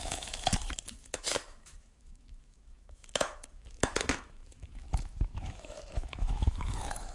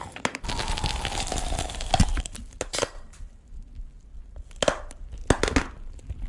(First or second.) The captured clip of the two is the second